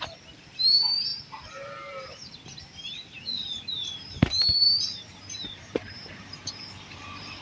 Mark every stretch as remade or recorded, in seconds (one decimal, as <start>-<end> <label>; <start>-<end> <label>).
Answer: 0.0-7.4 remade